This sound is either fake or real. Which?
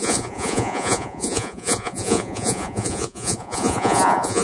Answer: fake